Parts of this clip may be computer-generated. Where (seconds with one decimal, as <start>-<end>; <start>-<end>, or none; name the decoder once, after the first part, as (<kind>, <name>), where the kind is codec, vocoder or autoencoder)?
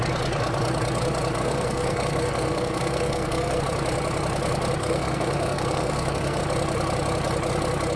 1.4-3.6 (codec, SNAC); 4.8-6.4